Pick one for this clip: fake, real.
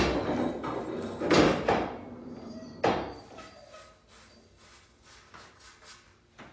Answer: real